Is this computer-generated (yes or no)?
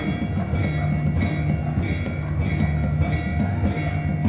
no